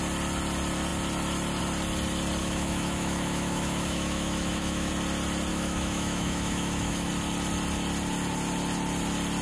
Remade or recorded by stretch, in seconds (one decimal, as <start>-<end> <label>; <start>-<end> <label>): 0.0-2.4 recorded; 2.4-4.9 remade; 4.9-5.5 recorded; 5.5-7.1 remade; 7.1-9.4 recorded